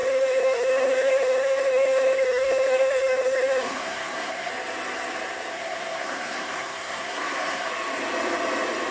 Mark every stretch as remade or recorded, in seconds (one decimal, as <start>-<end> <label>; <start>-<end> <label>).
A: 0.0-4.5 remade; 4.5-5.5 recorded; 5.5-7.7 remade; 7.7-8.9 recorded